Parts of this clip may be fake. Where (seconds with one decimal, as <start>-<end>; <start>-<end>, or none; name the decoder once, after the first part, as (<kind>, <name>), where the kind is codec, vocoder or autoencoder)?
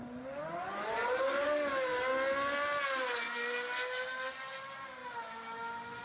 none